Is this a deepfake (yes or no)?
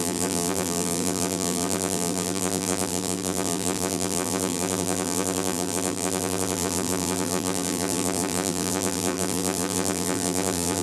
yes